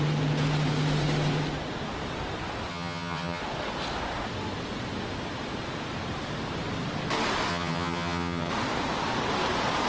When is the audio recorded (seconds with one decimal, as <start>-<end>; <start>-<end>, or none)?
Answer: 0.0-2.7; 3.4-7.5; 8.5-9.9

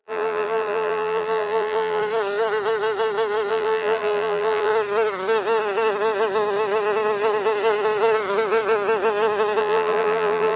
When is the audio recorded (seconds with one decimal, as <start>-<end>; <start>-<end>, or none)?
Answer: 2.0-3.5; 4.7-9.6

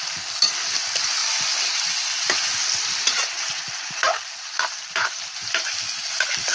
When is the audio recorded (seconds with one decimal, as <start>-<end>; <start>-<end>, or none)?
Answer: 0.0-6.5

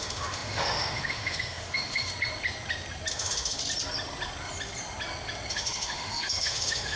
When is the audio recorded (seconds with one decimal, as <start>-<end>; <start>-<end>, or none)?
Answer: 2.1-3.1; 3.6-5.5

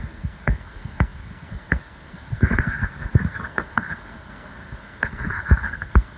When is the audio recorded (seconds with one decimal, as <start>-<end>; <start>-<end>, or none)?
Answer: none

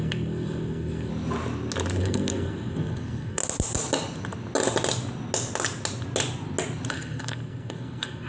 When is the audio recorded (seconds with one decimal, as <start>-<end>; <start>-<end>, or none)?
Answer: 1.1-2.0; 3.4-6.9